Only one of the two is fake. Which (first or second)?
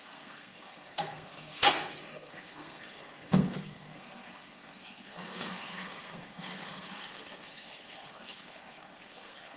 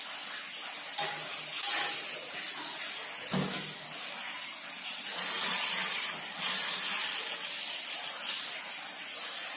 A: first